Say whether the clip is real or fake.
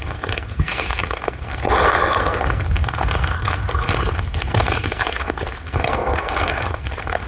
fake